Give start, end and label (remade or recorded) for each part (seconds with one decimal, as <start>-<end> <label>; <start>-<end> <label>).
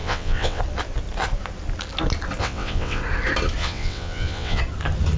0.0-0.6 remade; 0.6-2.4 recorded; 2.4-3.0 remade; 3.0-3.6 recorded; 3.6-4.6 remade; 4.6-5.2 recorded